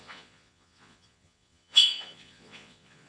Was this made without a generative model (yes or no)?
no